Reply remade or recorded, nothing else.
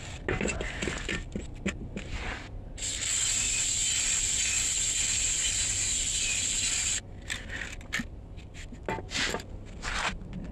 recorded